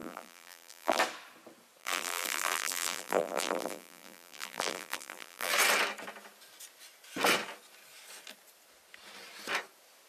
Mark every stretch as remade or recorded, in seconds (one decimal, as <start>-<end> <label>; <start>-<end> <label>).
0.0-1.0 remade; 1.0-1.8 recorded; 1.8-5.5 remade; 5.5-10.1 recorded